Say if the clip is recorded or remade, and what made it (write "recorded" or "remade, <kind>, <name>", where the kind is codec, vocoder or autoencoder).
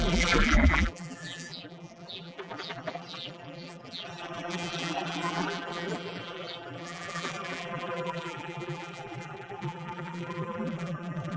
remade, vocoder, BigVGAN v2